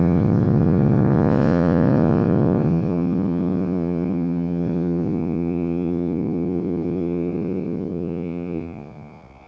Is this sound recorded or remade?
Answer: remade